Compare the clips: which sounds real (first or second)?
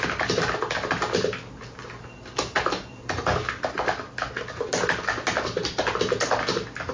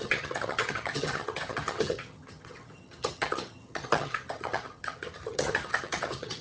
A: first